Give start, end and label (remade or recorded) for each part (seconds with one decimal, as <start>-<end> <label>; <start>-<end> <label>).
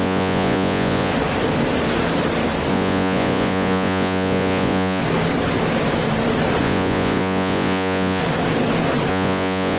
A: 0.0-1.1 remade; 1.1-2.7 recorded; 2.7-5.0 remade; 5.0-6.6 recorded; 6.6-8.2 remade; 8.2-9.1 recorded; 9.1-9.8 remade